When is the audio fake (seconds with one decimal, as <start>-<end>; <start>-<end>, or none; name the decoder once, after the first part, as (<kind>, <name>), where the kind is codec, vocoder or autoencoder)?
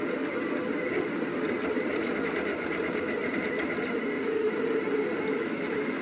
5.3-6.0 (autoencoder, DAC-VAE)